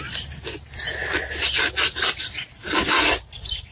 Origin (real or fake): real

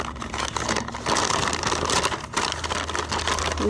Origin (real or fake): real